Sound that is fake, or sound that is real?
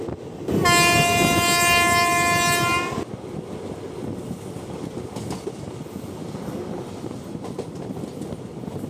real